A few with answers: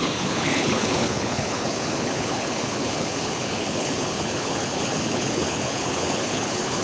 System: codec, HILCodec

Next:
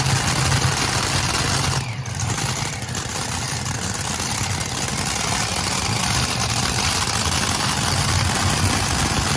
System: none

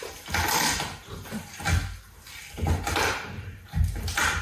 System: none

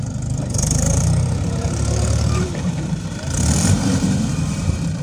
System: vocoder, BigVGAN v2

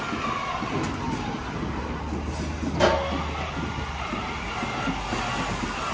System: none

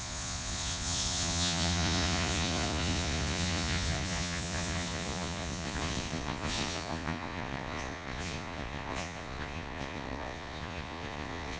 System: vocoder, Vocos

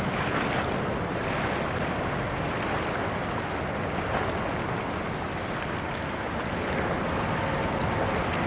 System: none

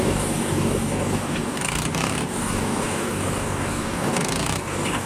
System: codec, DAC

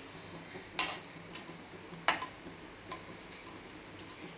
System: none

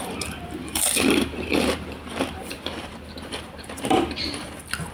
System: vocoder, BigVGAN v2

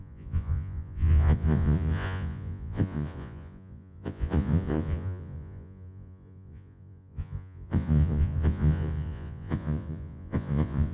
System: vocoder, Vocos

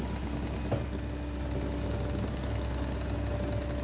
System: none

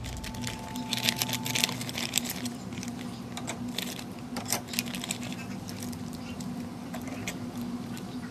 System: none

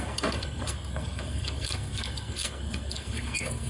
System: codec, SNAC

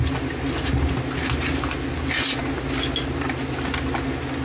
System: none